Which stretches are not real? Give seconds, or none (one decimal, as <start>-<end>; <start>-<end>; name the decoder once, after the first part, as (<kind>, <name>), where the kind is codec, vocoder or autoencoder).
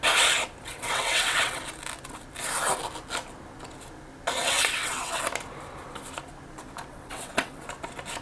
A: 0.7-1.6 (vocoder, WaveNeXt); 4.4-5.2; 6.9-7.6